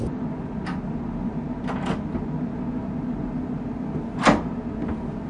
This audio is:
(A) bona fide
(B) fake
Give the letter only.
A